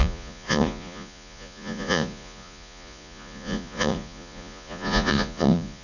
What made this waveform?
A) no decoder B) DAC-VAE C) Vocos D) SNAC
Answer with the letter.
C